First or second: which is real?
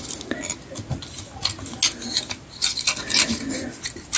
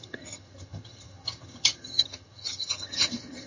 first